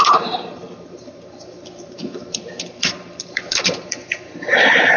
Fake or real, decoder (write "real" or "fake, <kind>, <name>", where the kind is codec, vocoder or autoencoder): fake, vocoder, BigVGAN v2